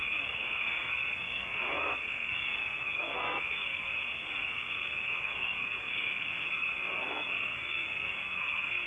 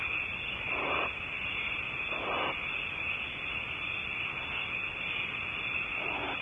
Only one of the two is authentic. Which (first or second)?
second